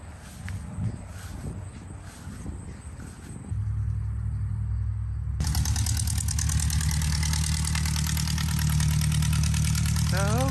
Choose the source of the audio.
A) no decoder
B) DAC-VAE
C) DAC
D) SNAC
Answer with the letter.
A